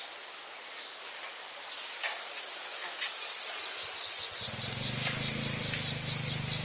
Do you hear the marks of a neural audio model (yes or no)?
no